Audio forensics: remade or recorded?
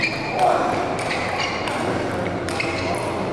recorded